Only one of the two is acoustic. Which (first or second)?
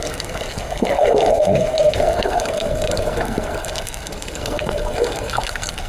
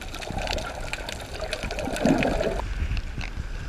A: second